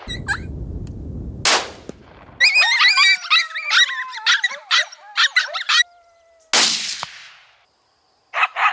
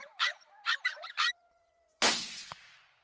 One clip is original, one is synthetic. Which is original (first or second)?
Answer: first